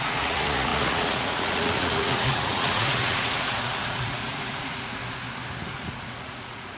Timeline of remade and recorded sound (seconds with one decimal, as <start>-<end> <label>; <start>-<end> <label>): 0.0-5.0 remade; 5.0-5.6 recorded; 5.6-6.8 remade

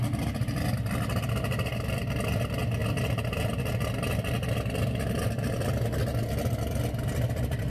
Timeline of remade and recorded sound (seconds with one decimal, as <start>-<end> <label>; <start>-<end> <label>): 0.0-7.7 recorded

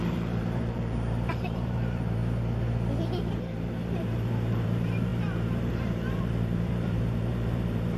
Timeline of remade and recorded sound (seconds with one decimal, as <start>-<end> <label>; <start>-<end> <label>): 0.0-2.2 remade; 2.2-3.3 recorded; 3.3-8.0 remade

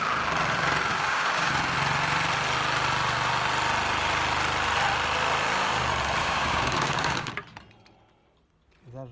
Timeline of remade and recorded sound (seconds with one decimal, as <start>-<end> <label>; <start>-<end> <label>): 0.0-0.9 recorded; 0.9-1.5 remade; 1.5-6.2 recorded; 6.2-7.3 remade; 7.3-9.1 recorded

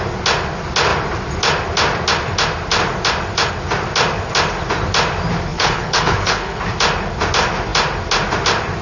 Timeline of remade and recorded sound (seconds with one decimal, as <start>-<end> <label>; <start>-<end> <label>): 0.0-5.5 recorded; 5.5-6.6 remade; 6.6-8.8 recorded

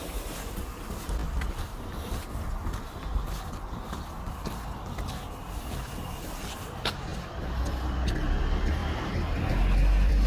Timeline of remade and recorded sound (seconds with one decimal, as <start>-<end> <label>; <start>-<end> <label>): 0.0-8.8 recorded; 8.8-9.5 remade; 9.5-10.3 recorded